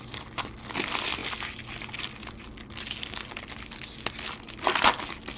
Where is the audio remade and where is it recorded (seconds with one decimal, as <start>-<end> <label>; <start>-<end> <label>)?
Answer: 0.0-5.4 recorded